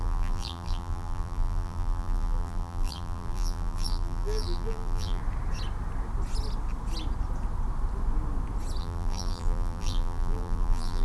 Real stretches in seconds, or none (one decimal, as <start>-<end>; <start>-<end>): 5.2-8.8